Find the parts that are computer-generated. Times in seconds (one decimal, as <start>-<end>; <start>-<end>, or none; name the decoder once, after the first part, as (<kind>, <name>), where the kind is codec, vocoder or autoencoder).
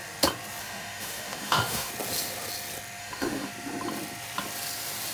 0.6-1.9 (autoencoder, DAC-VAE); 3.0-3.5